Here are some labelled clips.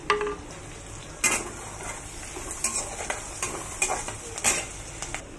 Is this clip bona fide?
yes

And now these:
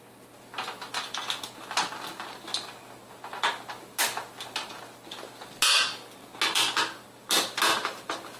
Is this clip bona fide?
yes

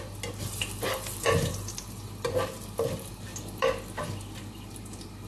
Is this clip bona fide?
yes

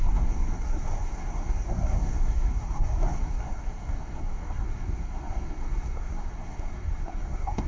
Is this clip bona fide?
no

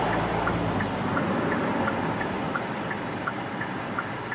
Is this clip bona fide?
yes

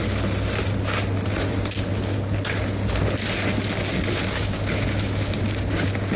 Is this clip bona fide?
yes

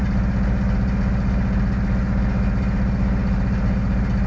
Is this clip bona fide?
yes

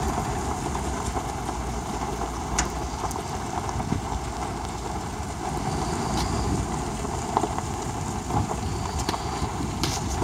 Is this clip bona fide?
yes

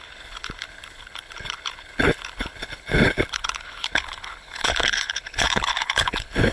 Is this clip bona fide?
no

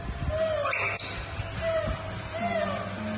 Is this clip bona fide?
yes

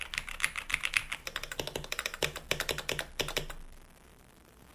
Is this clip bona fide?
yes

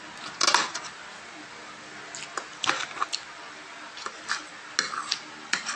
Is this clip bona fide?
yes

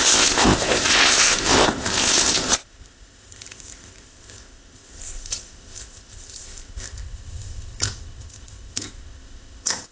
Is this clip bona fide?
no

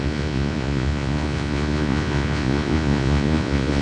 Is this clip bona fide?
no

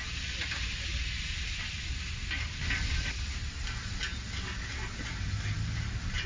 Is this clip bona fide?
yes